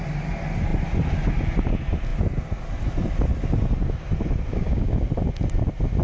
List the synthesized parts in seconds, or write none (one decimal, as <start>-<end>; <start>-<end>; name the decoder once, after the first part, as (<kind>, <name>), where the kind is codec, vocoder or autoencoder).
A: 4.5-5.0 (codec, DAC)

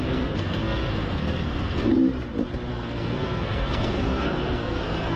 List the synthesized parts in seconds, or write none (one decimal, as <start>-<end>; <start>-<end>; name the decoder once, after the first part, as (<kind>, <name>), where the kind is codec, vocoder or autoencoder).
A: 0.0-1.9 (codec, SNAC); 2.7-5.2

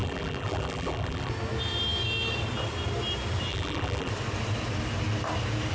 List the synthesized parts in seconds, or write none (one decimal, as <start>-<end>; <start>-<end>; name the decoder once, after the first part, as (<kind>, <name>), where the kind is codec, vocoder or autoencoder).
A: 0.0-1.3 (vocoder, BigVGAN v2); 3.5-4.1

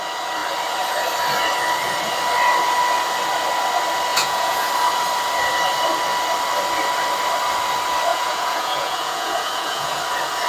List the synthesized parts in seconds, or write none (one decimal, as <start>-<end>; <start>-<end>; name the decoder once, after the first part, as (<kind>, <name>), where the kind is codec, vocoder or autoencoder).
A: 4.1-4.7 (vocoder, Vocos); 8.1-10.0

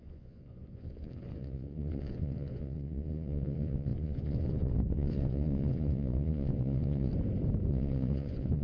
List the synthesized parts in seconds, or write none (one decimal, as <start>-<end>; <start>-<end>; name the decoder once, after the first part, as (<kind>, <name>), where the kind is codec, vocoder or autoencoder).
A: 0.0-7.1 (vocoder, Vocos); 7.7-8.6

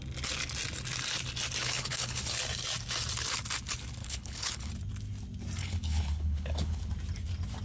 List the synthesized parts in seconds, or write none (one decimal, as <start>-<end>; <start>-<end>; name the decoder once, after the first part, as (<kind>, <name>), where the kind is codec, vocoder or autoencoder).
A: 1.6-2.4 (codec, HILCodec); 4.0-4.7; 5.6-6.9